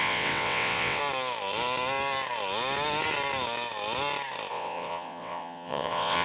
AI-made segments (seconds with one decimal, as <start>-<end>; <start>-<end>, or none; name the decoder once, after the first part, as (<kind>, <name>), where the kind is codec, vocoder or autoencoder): 0.0-1.0 (vocoder, WaveNeXt); 4.5-6.2